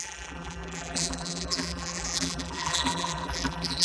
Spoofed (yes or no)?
yes